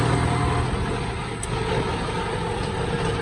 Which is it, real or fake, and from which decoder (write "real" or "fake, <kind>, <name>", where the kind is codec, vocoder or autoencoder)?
real